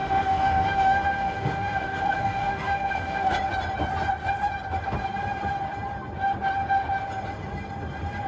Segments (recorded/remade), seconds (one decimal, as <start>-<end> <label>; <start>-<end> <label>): 0.0-3.3 remade; 3.3-8.3 recorded